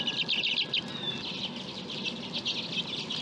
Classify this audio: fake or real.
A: real